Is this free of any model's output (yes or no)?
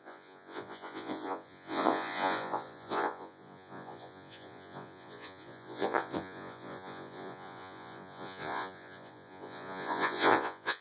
no